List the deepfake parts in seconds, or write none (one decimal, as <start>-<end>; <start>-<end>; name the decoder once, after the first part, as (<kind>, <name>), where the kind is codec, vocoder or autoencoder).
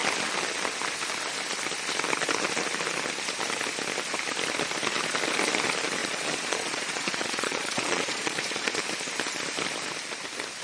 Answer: 6.0-8.8 (vocoder, Vocos)